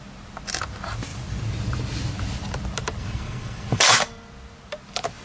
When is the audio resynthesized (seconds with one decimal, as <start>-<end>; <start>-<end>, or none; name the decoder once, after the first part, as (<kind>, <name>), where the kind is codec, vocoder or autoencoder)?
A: 3.0-3.8 (codec, SNAC)